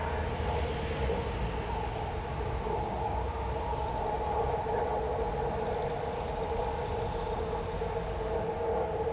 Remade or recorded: recorded